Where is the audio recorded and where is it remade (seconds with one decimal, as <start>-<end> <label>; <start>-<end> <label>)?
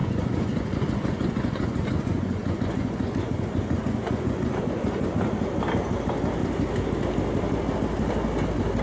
0.0-5.1 remade; 5.1-8.8 recorded